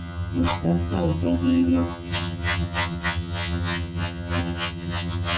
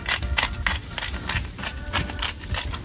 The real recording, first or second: second